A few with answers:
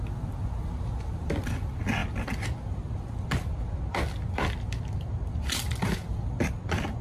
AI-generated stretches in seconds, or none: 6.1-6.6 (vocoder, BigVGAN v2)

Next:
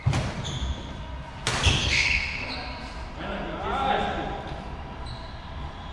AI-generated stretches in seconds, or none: 1.8-2.5 (codec, SNAC)

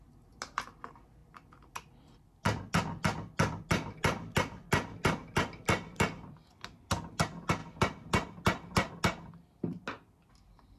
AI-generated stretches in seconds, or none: none